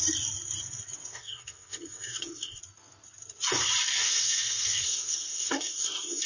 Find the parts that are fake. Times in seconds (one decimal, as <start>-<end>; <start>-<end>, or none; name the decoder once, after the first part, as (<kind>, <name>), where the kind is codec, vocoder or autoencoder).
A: 1.1-2.6 (codec, SNAC); 4.0-6.3